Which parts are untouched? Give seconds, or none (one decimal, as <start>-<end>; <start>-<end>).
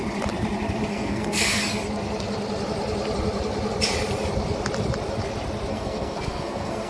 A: 0.0-0.9; 1.6-5.7